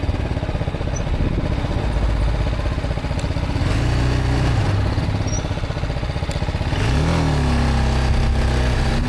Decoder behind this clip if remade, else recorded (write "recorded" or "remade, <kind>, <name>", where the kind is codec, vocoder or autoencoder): recorded